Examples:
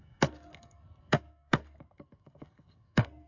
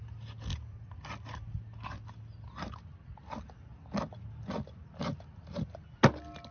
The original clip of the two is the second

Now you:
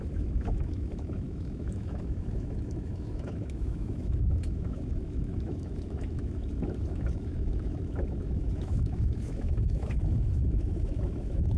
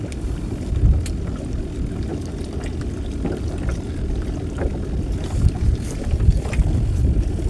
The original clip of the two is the second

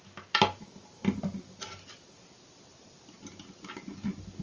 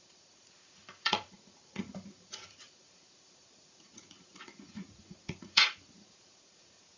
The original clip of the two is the first